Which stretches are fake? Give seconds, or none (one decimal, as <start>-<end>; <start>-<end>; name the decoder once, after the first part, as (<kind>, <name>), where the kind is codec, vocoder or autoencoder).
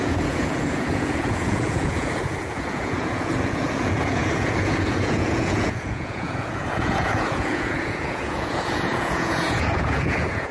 0.0-10.5 (vocoder, Vocos)